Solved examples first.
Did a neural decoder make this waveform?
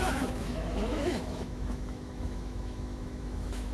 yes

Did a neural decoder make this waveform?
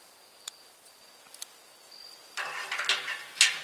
no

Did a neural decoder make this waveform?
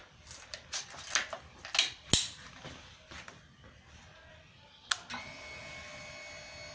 no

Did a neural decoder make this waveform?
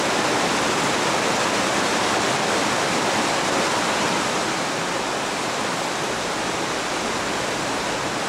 no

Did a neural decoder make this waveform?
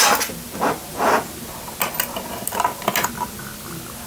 no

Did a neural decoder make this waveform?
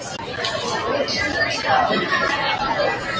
no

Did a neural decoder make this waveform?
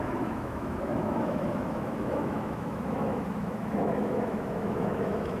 yes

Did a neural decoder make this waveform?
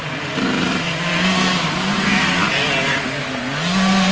no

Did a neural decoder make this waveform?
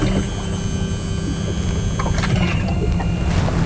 no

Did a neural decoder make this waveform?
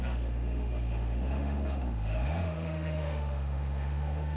yes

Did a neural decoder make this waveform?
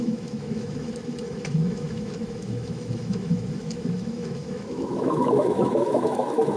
yes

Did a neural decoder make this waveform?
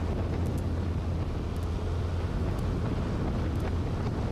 no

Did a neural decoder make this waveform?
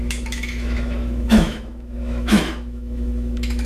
yes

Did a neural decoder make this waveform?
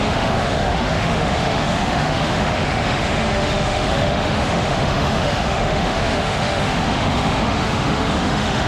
yes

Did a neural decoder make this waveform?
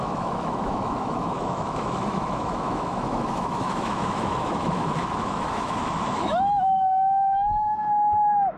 yes